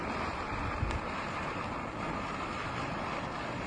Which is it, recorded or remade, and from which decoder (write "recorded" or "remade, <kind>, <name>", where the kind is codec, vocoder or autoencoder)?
recorded